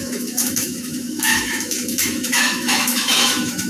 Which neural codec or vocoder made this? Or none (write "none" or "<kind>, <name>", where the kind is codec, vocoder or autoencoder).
autoencoder, DAC-VAE